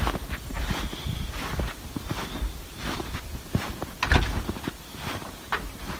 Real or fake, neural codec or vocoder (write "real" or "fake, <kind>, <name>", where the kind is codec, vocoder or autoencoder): real